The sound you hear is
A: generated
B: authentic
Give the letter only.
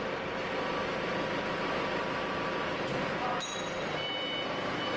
B